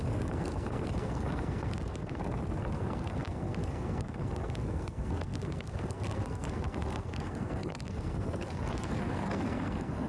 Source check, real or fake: fake